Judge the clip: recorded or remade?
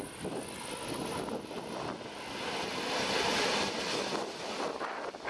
recorded